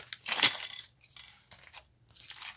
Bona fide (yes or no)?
yes